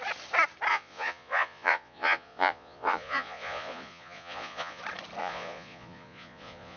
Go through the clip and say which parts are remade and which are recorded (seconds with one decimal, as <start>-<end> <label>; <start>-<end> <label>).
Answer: 0.0-0.7 recorded; 0.7-4.8 remade; 4.8-5.2 recorded; 5.2-6.8 remade